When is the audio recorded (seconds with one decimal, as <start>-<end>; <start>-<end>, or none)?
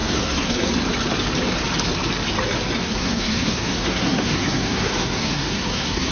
0.7-2.8